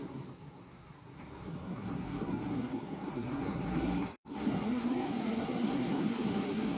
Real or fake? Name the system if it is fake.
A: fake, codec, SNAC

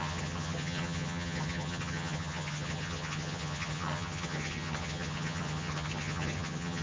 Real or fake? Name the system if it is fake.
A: fake, vocoder, HiFi-GAN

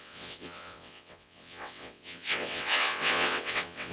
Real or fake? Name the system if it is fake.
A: fake, vocoder, WaveNeXt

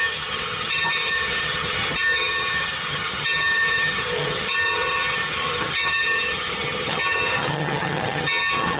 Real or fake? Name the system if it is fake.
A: fake, vocoder, HiFi-GAN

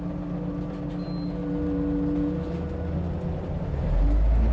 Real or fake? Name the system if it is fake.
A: real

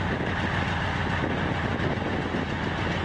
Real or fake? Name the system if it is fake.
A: real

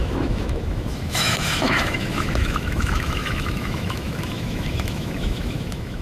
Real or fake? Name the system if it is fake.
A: fake, autoencoder, DAC-VAE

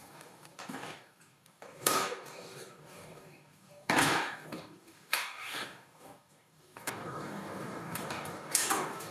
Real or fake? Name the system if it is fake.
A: fake, codec, DAC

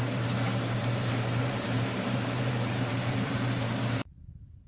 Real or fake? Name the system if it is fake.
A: fake, vocoder, BigVGAN v2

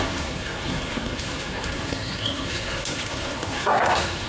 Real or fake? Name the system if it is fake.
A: fake, codec, SNAC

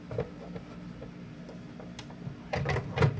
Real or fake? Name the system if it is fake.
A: real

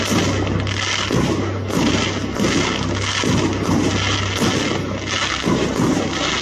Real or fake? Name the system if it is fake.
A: real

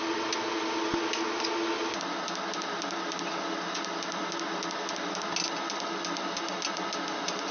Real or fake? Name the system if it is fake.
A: real